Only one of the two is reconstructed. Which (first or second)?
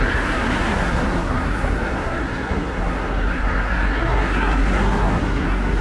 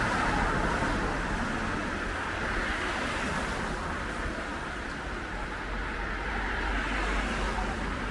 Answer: first